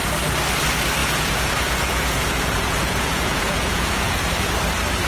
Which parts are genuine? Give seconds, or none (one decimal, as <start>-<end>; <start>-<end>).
0.0-1.0; 4.1-5.1